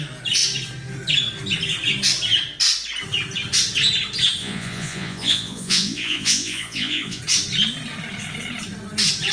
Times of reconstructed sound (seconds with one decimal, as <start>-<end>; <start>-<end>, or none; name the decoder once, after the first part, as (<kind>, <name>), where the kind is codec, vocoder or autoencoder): 4.4-7.2 (vocoder, Vocos)